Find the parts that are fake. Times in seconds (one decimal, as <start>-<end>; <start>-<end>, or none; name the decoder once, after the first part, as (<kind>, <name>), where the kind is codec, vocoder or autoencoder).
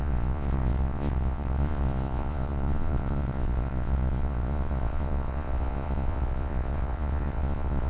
0.0-7.9 (vocoder, Vocos)